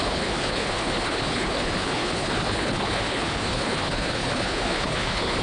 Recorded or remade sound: remade